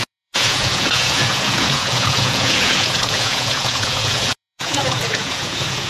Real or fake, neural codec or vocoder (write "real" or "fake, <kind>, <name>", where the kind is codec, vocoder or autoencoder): fake, vocoder, Vocos